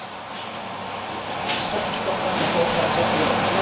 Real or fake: real